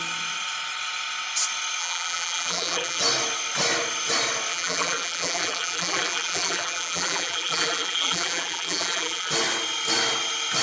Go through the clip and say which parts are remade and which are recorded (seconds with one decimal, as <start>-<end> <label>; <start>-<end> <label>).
0.0-1.8 recorded; 1.8-3.0 remade; 3.0-4.5 recorded; 4.5-9.3 remade; 9.3-10.6 recorded